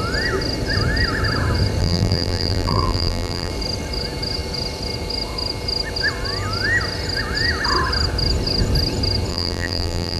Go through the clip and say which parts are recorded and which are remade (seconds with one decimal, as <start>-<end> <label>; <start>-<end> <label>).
0.0-1.8 recorded; 1.8-3.5 remade; 3.5-9.3 recorded; 9.3-10.2 remade